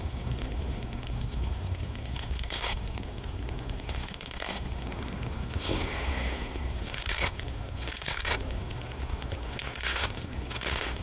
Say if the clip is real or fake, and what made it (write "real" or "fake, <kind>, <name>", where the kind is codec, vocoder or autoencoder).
fake, codec, SNAC